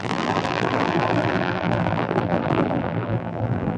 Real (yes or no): no